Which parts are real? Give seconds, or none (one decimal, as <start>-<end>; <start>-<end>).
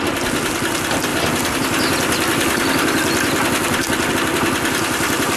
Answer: 0.0-5.4